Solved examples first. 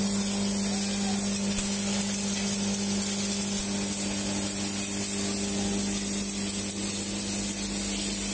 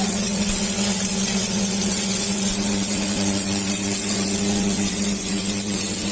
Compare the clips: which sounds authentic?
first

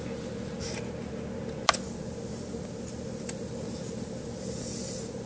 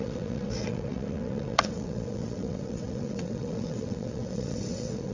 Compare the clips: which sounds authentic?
first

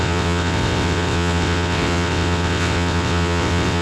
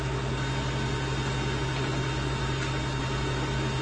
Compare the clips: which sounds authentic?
second